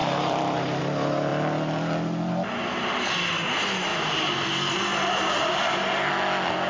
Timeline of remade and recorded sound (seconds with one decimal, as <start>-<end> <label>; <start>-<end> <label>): 0.0-0.8 remade; 0.8-6.7 recorded